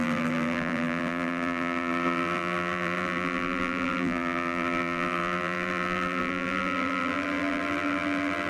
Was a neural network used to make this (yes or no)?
yes